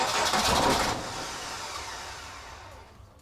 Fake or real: real